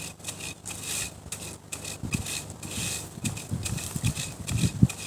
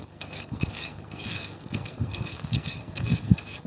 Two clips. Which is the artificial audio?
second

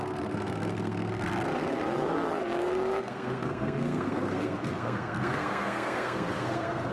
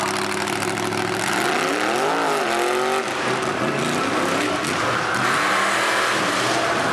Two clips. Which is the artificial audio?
first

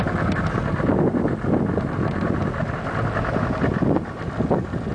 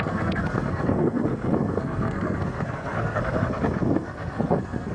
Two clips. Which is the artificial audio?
second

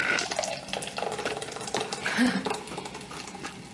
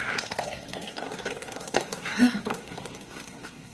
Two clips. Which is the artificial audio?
second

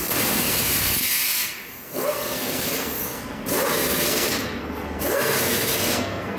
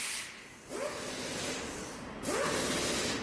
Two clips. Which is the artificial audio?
first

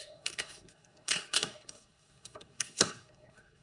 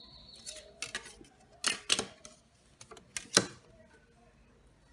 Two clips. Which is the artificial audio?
first